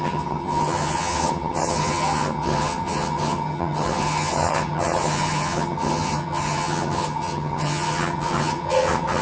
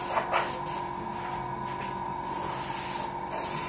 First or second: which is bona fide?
second